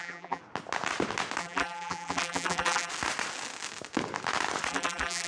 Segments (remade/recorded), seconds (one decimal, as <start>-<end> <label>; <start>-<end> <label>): 0.0-0.4 remade; 0.4-1.4 recorded; 1.4-2.9 remade; 2.9-4.7 recorded; 4.7-5.3 remade